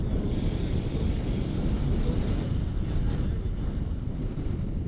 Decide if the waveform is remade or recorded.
remade